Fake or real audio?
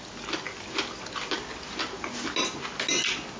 real